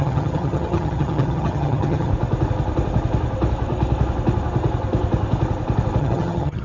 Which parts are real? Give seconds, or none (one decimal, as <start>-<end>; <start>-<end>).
2.1-6.0